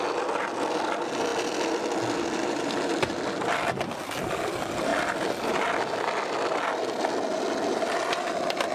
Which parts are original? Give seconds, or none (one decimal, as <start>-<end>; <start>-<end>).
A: 0.0-8.7